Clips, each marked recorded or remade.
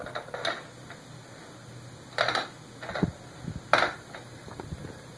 recorded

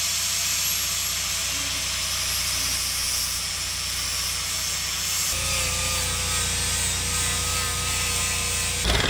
recorded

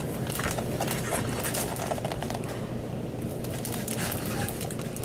recorded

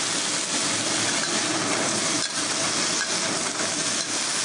recorded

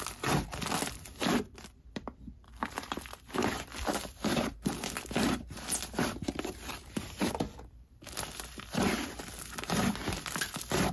remade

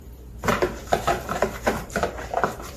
remade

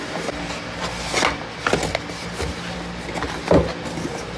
recorded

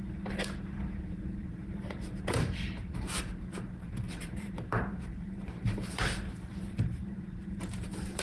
remade